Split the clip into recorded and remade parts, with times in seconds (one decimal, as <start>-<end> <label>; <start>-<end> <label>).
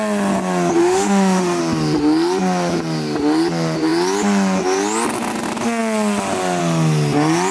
0.0-0.8 recorded; 0.8-1.6 remade; 1.6-7.5 recorded